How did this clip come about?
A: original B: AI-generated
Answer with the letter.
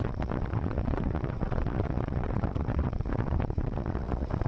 B